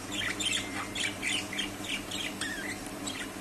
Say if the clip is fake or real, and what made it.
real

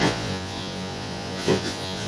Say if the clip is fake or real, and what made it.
fake, vocoder, Vocos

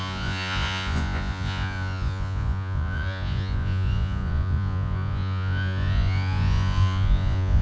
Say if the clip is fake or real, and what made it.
fake, vocoder, Vocos